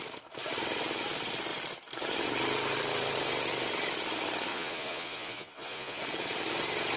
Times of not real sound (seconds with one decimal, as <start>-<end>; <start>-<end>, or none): 4.5-6.0